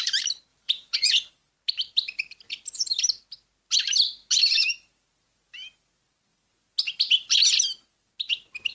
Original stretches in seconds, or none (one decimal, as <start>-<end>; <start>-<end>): 0.0-0.5; 1.1-8.7